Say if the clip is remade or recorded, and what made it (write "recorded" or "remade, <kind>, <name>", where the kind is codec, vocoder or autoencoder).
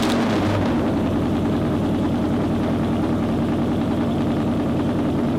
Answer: remade, vocoder, BigVGAN v2